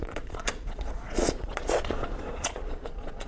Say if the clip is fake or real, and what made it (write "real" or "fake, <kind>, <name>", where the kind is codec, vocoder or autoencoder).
fake, vocoder, Vocos